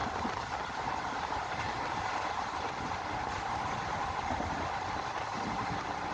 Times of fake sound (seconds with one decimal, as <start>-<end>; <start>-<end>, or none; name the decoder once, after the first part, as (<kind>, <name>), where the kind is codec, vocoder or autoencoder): none